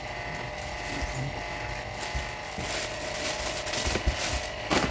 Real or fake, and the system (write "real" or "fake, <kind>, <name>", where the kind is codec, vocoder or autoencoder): real